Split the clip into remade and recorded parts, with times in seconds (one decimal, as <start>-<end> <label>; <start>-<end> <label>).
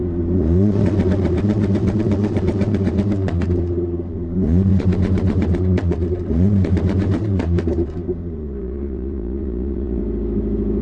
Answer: 0.0-10.0 remade; 10.0-10.8 recorded